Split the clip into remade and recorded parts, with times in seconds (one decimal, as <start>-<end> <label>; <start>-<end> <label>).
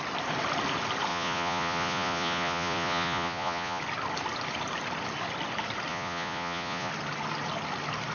0.0-1.1 recorded; 1.1-3.8 remade; 3.8-5.9 recorded; 5.9-6.9 remade; 6.9-8.1 recorded